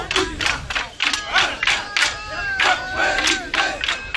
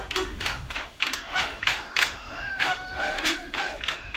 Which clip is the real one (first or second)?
first